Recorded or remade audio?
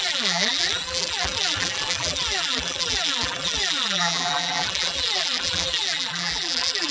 remade